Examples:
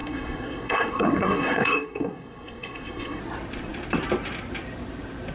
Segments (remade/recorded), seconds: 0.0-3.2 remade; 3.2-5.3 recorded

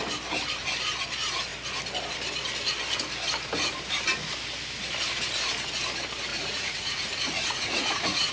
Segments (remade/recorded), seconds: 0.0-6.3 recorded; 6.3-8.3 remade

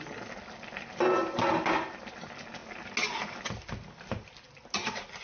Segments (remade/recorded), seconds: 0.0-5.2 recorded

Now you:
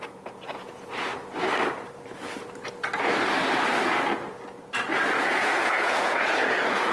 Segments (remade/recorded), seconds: 0.0-1.1 remade; 1.1-5.2 recorded; 5.2-6.9 remade

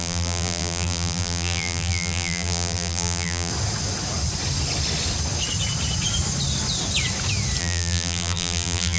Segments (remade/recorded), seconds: 0.0-3.5 remade; 3.5-7.6 recorded; 7.6-9.0 remade

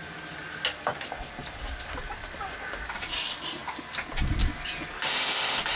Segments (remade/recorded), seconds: 0.0-5.8 recorded

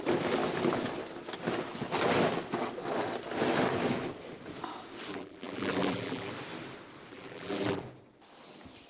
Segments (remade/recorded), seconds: 0.0-5.1 recorded; 5.1-6.3 remade; 6.3-7.1 recorded; 7.1-7.8 remade; 7.8-8.9 recorded